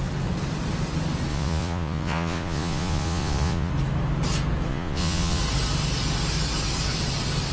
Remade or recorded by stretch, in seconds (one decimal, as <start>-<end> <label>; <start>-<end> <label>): 0.0-1.3 recorded; 1.3-3.7 remade; 3.7-4.7 recorded; 4.7-5.4 remade; 5.4-7.5 recorded